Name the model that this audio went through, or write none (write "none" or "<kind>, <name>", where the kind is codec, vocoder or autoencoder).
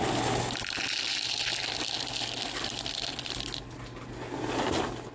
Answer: none